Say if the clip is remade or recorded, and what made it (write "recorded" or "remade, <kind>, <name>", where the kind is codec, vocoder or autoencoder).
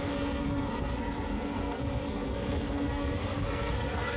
remade, codec, SNAC